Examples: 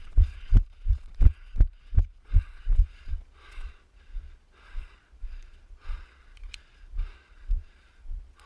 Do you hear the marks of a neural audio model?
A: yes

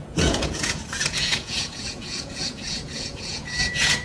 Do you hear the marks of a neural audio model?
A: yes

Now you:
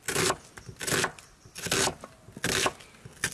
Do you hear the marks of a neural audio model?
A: no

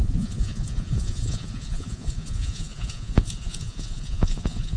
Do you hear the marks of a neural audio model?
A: yes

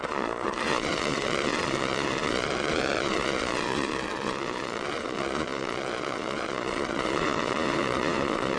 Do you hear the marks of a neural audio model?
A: yes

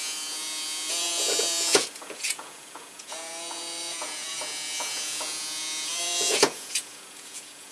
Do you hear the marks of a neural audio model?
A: yes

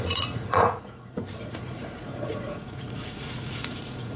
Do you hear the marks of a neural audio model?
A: yes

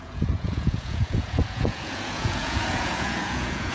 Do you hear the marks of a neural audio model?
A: yes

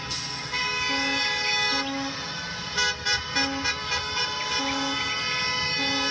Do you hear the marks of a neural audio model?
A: no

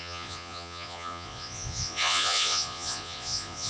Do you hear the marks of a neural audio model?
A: yes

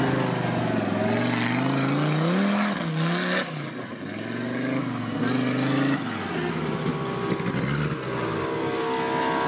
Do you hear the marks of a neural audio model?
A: no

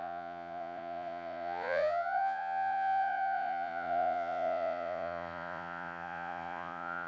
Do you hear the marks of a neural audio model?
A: yes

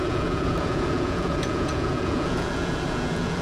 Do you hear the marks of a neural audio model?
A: yes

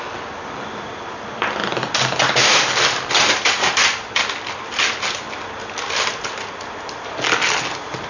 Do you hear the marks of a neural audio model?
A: no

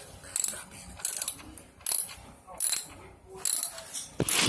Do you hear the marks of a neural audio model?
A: no